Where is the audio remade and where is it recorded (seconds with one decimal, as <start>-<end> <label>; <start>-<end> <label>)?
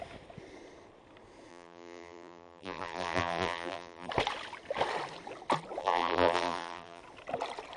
0.0-1.5 recorded; 1.5-4.1 remade; 4.1-5.8 recorded; 5.8-7.0 remade; 7.0-7.8 recorded